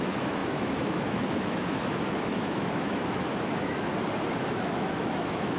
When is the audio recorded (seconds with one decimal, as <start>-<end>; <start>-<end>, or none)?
3.9-4.5